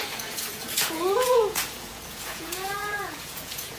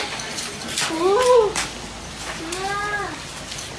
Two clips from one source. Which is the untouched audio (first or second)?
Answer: second